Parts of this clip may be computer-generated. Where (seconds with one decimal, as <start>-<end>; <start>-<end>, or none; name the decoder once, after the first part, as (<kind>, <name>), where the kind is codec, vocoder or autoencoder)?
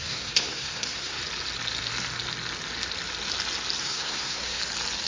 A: 0.0-1.2 (codec, SNAC); 3.8-4.6